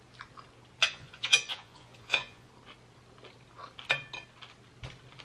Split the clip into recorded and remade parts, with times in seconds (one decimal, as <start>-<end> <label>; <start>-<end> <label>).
0.0-0.8 recorded; 0.8-2.5 remade; 2.5-5.2 recorded